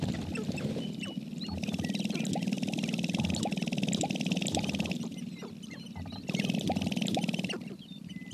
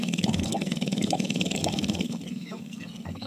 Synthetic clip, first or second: second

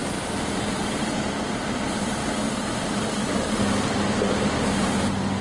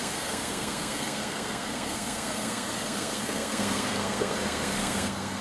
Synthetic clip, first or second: second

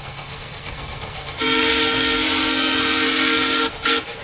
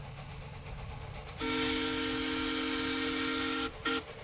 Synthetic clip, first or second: first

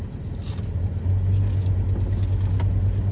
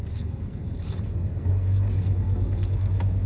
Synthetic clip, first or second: second